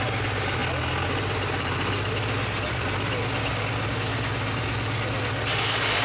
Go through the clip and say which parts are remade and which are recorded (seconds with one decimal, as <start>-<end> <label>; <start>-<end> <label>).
0.0-6.0 recorded